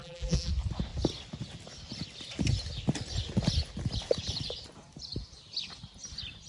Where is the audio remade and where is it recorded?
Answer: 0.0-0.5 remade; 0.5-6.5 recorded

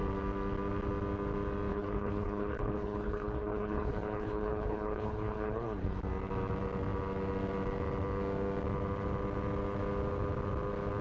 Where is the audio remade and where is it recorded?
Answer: 0.0-1.7 recorded; 1.7-6.0 remade; 6.0-11.0 recorded

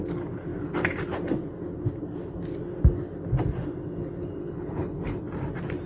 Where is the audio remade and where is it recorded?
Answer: 0.0-4.4 recorded; 4.4-5.2 remade; 5.2-5.9 recorded

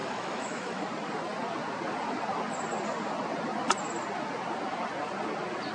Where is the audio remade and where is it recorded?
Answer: 0.0-0.8 remade; 0.8-5.7 recorded

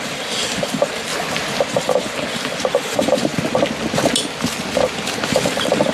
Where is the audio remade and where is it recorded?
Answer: 0.0-1.1 remade; 1.1-1.6 recorded; 1.6-3.3 remade; 3.3-5.3 recorded; 5.3-5.9 remade

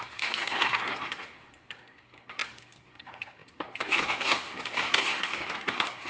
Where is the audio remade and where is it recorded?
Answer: 0.0-6.1 remade

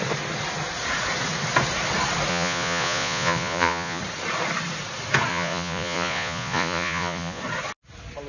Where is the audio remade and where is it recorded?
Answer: 0.0-2.3 recorded; 2.3-4.0 remade; 4.0-5.3 recorded; 5.3-7.4 remade; 7.4-8.3 recorded